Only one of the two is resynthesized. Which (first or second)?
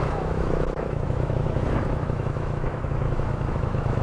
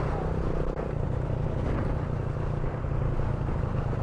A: first